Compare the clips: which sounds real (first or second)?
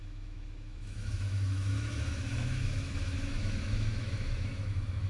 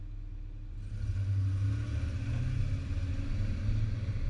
second